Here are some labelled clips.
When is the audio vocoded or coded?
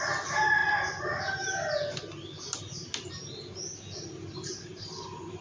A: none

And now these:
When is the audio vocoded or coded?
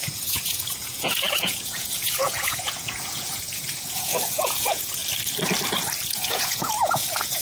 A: 0.0-5.0 (vocoder, Vocos); 6.1-7.4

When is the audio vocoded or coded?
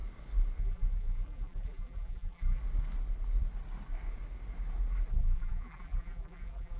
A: 0.6-2.6 (vocoder, BigVGAN v2); 5.1-6.8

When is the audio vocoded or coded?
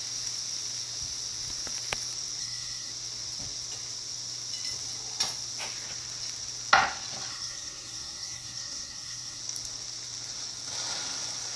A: 2.4-2.9 (codec, SNAC); 7.3-9.4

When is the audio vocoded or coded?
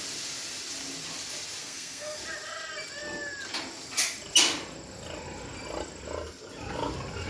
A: 1.6-2.2 (codec, SNAC)